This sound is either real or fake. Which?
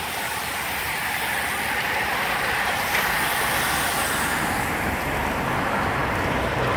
real